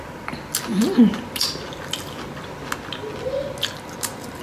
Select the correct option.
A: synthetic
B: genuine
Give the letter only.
B